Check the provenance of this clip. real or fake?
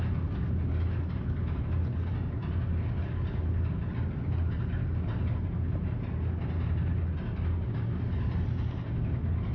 real